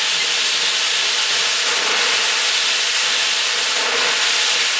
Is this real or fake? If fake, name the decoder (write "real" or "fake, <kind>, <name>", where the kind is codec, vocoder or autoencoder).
real